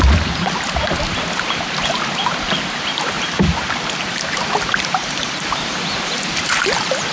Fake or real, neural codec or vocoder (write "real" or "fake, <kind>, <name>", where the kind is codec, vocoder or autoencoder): real